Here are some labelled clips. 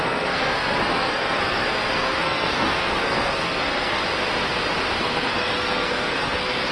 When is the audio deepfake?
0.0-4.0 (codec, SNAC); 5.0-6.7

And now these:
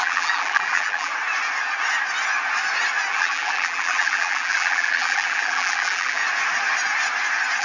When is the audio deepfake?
0.0-1.1 (vocoder, BigVGAN v2); 3.1-6.2

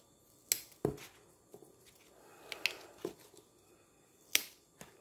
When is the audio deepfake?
none